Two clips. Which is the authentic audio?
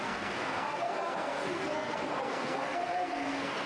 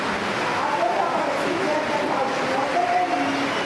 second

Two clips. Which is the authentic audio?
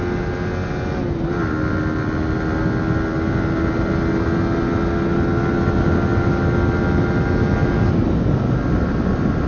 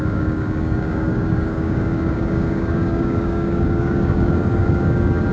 first